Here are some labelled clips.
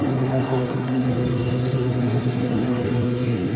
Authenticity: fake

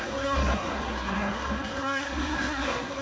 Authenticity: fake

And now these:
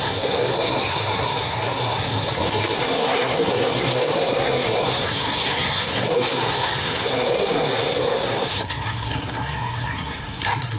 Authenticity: fake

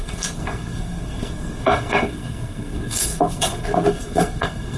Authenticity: fake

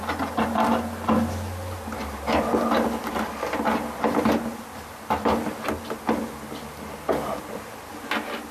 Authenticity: real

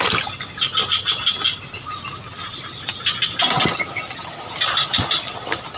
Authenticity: real